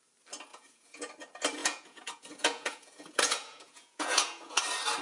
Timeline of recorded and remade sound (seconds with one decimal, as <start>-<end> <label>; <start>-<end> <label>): 0.0-0.5 recorded; 0.5-1.1 remade; 1.1-1.6 recorded; 1.6-4.6 remade; 4.6-5.0 recorded